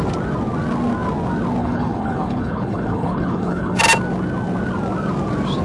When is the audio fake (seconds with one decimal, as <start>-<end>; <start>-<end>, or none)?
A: 1.6-3.8

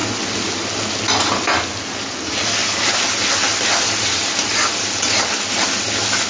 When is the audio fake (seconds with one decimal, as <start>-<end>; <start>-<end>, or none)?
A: none

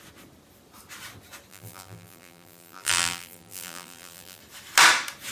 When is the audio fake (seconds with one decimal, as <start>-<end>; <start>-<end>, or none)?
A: 1.5-4.4

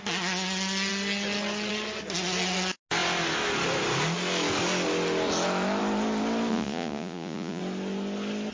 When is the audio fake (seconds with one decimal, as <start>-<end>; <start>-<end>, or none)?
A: 6.5-7.6

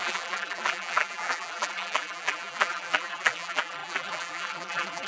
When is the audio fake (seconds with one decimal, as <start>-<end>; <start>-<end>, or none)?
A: 0.0-5.1

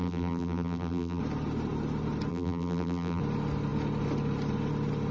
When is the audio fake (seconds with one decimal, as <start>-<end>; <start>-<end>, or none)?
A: 0.0-1.2; 2.3-3.2

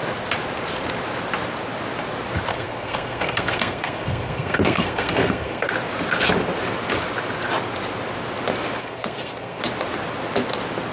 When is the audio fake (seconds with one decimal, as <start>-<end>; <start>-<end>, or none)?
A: 2.5-5.7; 8.8-9.6

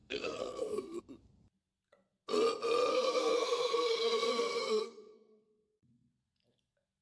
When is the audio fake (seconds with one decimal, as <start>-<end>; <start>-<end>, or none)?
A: 0.0-1.0; 2.9-6.1